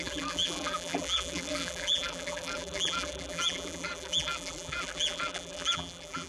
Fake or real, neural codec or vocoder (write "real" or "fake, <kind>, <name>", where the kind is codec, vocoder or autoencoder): fake, vocoder, BigVGAN v2